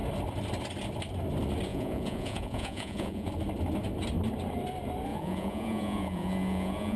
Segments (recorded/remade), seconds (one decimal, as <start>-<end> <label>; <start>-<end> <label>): 0.0-1.7 recorded; 1.7-3.3 remade; 3.3-5.1 recorded; 5.1-7.0 remade